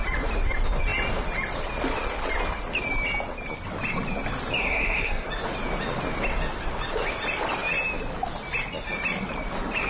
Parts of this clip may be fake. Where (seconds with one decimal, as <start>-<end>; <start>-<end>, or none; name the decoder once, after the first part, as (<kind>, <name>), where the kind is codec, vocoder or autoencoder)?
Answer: 4.6-5.3 (codec, SNAC)